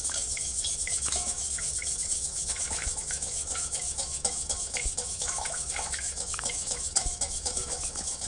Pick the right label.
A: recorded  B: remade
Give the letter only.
B